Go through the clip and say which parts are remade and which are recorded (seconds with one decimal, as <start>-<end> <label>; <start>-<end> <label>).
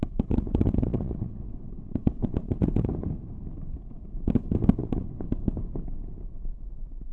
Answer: 0.0-2.9 remade; 2.9-4.8 recorded; 4.8-5.4 remade; 5.4-7.1 recorded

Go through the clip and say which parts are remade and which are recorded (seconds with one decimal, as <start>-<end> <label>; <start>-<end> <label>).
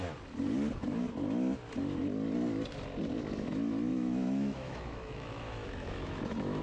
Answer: 0.0-3.9 recorded; 3.9-6.6 remade